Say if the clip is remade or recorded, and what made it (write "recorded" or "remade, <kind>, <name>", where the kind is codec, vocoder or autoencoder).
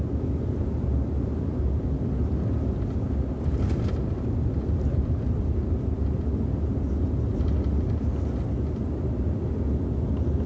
recorded